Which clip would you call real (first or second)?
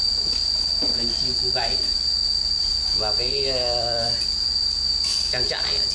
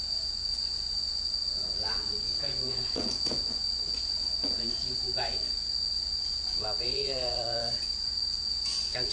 first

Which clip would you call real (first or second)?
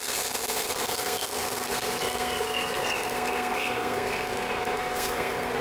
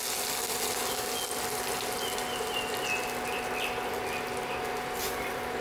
second